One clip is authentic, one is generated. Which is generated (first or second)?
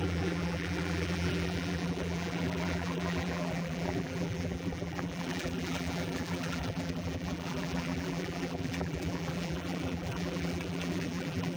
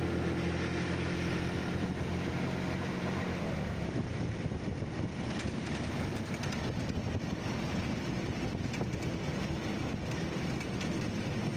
first